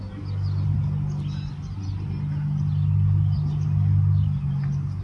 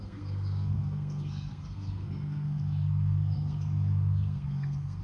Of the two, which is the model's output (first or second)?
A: second